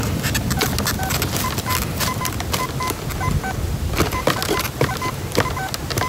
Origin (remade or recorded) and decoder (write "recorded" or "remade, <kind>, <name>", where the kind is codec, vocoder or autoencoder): recorded